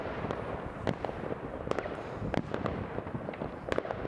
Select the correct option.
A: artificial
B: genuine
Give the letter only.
B